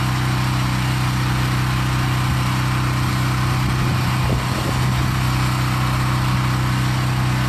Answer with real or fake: real